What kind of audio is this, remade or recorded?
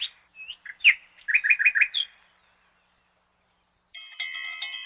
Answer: recorded